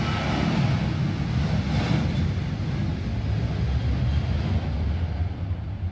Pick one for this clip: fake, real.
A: real